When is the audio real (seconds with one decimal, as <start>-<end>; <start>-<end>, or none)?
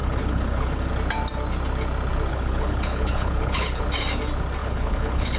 0.9-2.3; 3.8-4.6